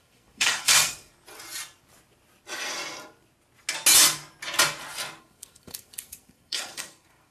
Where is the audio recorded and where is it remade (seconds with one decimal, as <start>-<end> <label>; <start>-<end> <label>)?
0.0-1.1 remade; 1.1-5.2 recorded; 5.2-7.3 remade